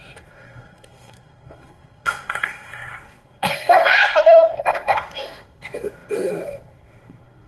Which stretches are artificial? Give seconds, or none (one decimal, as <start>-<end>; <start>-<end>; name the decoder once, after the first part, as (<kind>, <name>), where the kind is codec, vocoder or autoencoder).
0.0-7.5 (codec, SNAC)